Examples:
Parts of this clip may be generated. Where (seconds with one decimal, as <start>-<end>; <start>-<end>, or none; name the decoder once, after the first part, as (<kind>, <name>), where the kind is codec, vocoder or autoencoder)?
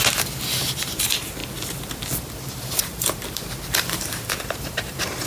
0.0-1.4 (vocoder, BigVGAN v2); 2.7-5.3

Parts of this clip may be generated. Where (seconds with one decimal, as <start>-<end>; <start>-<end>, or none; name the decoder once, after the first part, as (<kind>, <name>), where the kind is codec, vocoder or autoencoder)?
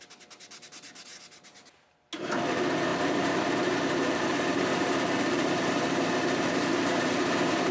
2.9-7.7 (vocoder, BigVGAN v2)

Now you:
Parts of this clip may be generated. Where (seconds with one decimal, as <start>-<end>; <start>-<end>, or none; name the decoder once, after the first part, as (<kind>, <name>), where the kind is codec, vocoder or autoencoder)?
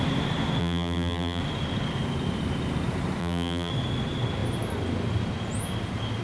0.6-1.4 (vocoder, BigVGAN v2); 3.2-3.7